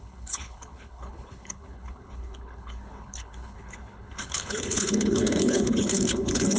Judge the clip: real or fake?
fake